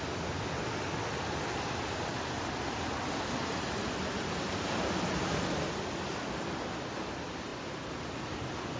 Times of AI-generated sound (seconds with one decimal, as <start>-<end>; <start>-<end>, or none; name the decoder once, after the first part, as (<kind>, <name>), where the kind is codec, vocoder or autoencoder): none